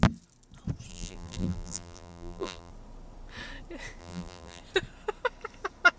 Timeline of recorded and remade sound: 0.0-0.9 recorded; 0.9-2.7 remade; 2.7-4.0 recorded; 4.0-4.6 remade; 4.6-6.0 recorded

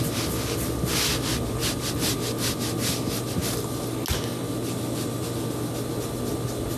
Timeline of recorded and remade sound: 0.0-6.8 recorded

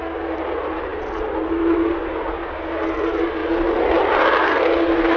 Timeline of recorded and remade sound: 0.0-5.2 recorded